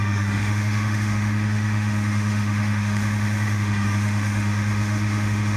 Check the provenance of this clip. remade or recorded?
remade